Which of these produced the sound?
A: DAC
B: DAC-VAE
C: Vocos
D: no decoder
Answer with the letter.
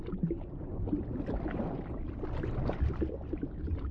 D